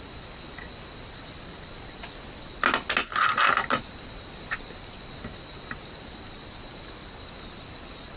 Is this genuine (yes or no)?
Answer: yes